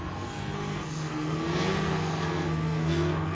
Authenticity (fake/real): fake